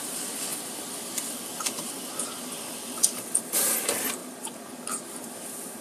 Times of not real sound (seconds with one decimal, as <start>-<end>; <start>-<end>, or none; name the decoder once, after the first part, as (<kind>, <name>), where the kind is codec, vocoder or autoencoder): 0.0-5.8 (vocoder, BigVGAN v2)